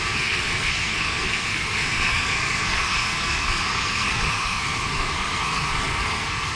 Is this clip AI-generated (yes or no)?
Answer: yes